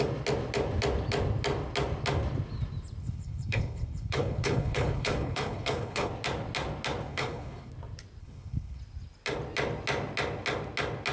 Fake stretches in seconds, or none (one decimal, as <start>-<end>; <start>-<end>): 3.0-6.1; 7.1-7.7; 8.2-8.8